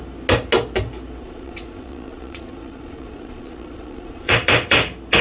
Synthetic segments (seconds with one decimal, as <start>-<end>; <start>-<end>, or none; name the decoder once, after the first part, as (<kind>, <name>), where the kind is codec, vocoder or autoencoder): 1.2-4.3 (vocoder, Vocos)